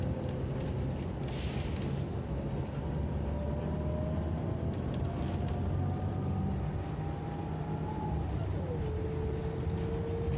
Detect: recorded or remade recorded